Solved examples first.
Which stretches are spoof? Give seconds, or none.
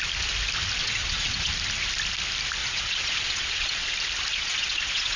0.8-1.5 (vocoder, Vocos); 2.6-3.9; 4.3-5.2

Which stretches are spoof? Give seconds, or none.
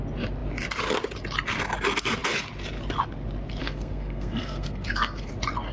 3.6-5.3 (codec, SNAC)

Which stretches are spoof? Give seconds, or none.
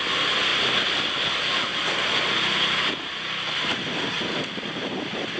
none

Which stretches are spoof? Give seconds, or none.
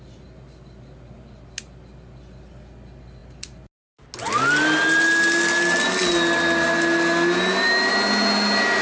none